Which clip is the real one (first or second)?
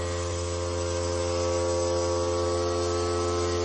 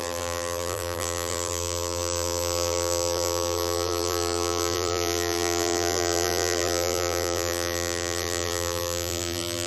first